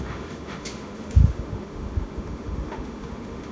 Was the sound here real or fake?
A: fake